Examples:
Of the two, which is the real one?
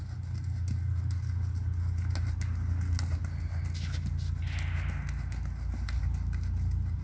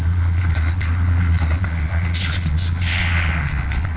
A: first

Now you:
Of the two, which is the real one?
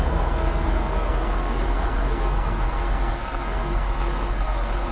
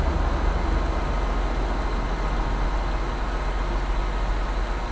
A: second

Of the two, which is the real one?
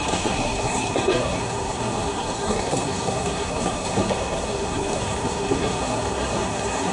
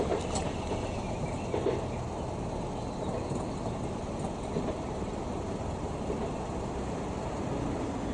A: second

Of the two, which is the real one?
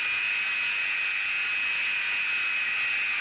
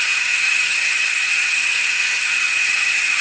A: first